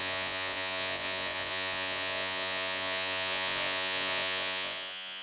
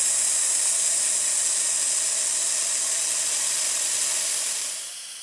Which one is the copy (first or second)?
first